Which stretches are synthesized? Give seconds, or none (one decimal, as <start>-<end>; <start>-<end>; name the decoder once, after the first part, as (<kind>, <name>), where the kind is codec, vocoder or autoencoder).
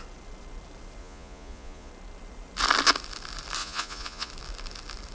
1.0-1.9 (vocoder, Vocos); 3.6-4.3